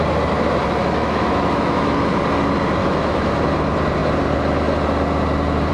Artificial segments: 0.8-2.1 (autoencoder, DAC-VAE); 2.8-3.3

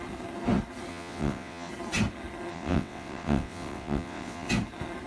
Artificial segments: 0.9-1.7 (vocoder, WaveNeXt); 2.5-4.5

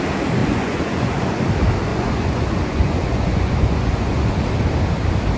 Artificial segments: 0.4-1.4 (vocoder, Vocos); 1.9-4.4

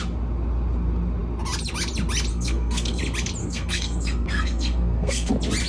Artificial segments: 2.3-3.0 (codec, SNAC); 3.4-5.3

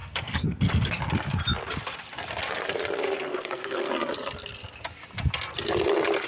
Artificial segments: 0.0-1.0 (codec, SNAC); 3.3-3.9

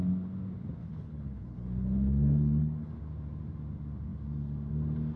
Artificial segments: 0.8-3.0 (codec, HILCodec)